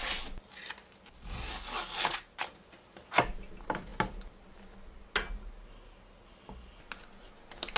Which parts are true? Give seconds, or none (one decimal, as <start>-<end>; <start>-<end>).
0.0-7.8

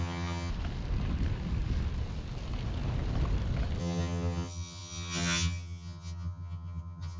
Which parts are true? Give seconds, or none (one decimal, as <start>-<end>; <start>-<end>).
0.5-3.8

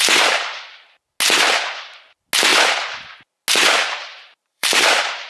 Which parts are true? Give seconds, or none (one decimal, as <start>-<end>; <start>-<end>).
0.0-4.1